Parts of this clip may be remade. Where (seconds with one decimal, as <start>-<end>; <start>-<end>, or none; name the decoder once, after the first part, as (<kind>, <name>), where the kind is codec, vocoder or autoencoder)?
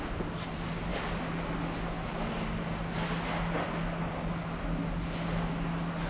none